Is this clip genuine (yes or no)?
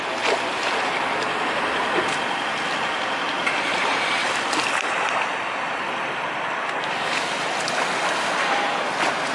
yes